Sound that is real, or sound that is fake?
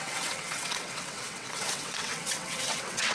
fake